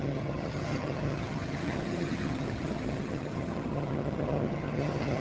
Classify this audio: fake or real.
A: fake